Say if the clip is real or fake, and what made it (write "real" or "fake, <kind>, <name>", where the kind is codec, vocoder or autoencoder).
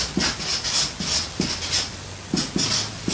real